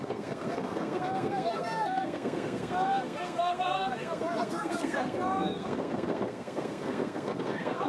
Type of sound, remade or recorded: remade